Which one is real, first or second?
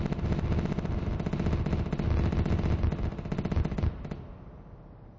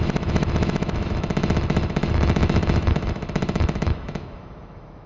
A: first